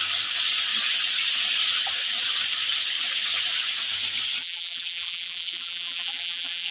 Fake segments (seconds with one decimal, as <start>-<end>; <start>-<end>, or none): 4.4-6.7